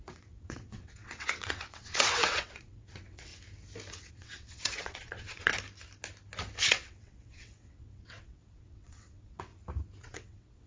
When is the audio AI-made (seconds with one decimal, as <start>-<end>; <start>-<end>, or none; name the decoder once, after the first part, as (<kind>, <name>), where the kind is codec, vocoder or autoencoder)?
0.0-3.3 (vocoder, WaveNeXt); 4.1-5.5; 6.7-9.5; 10.0-10.7